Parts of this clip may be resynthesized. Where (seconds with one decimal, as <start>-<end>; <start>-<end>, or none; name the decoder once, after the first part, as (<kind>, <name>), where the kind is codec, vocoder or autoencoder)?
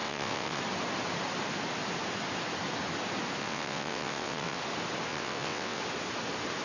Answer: 0.0-0.6 (vocoder, WaveNeXt); 3.4-4.6; 5.1-5.8